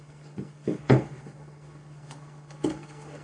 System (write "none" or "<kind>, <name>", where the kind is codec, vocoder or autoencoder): codec, SNAC